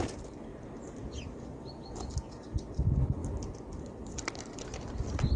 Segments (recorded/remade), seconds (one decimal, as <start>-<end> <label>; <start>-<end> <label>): 0.0-0.5 remade; 0.5-1.9 recorded; 1.9-3.2 remade; 3.2-3.8 recorded; 3.8-5.4 remade